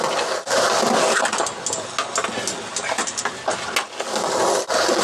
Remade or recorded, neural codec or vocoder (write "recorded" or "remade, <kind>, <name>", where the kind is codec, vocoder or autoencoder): recorded